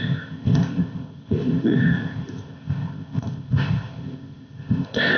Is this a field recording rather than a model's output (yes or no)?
no